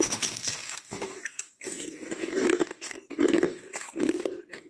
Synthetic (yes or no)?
yes